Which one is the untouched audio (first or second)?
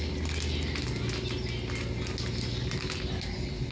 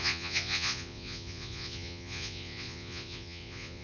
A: first